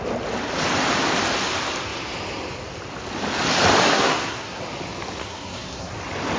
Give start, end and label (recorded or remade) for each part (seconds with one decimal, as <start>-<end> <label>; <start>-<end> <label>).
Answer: 0.0-3.9 recorded; 3.9-4.6 remade; 4.6-5.2 recorded; 5.2-5.9 remade; 5.9-6.4 recorded